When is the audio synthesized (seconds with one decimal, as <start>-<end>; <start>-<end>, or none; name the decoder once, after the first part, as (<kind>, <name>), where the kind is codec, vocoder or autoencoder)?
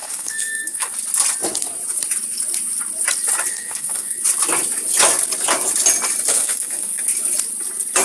0.0-0.9 (codec, SNAC); 3.5-4.2; 6.3-7.0